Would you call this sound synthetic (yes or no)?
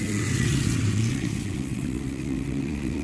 yes